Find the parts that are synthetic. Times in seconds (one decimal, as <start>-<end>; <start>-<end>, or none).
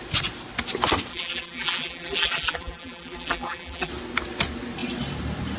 1.1-3.9